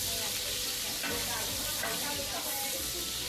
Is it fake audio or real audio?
real